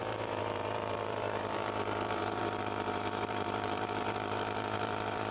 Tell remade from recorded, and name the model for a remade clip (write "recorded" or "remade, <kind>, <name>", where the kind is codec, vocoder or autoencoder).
remade, vocoder, BigVGAN v2